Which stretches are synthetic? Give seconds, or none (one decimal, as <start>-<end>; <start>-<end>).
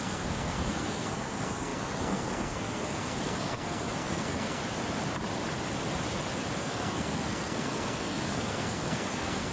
0.0-4.6; 6.6-9.5